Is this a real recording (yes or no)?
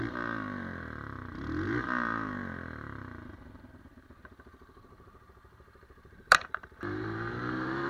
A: no